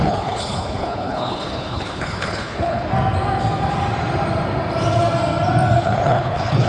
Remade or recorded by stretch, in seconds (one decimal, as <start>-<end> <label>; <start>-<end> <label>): 0.0-2.9 remade; 2.9-5.8 recorded; 5.8-6.7 remade